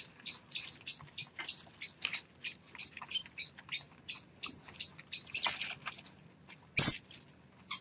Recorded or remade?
recorded